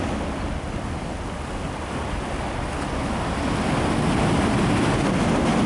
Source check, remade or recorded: recorded